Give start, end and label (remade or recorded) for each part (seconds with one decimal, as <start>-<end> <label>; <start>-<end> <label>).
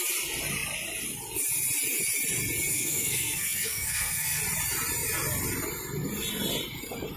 0.0-2.7 recorded; 2.7-4.4 remade; 4.4-7.2 recorded